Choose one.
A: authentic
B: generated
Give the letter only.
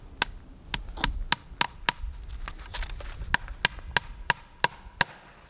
A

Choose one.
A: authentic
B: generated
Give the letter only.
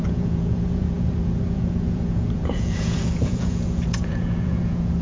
B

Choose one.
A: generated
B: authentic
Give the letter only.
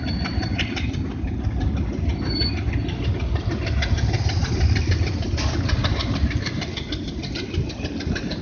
B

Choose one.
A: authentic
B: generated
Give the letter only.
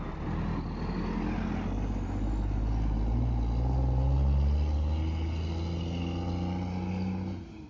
A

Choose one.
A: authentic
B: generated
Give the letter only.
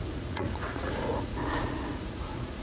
B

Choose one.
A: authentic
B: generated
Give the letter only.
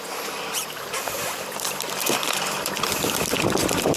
B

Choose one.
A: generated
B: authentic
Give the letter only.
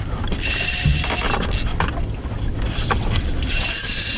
B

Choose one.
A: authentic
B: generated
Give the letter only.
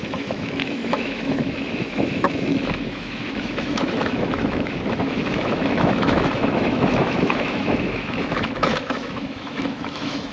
B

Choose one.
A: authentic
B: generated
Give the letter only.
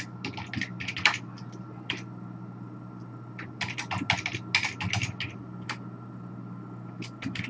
A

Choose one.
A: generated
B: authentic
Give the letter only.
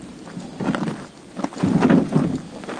B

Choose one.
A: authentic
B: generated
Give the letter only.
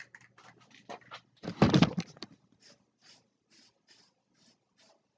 A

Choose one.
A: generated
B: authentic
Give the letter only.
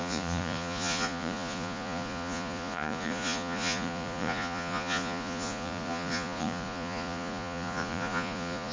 A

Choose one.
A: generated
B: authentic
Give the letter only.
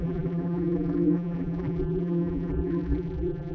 A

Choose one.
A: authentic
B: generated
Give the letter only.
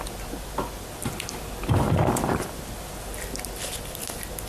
A